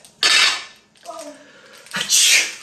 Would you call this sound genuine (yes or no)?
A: yes